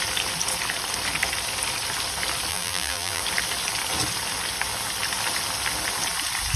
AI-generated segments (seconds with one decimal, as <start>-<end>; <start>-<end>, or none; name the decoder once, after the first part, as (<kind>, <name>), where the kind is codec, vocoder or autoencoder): 2.5-3.2 (vocoder, BigVGAN v2)